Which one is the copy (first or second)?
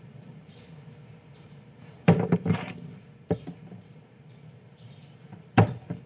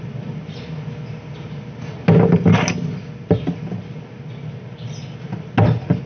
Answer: first